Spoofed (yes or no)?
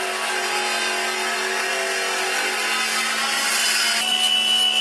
no